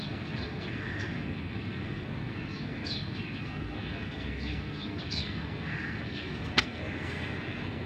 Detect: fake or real fake